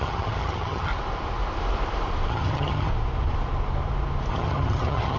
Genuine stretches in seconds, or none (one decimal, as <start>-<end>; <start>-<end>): 0.9-2.3; 2.9-4.3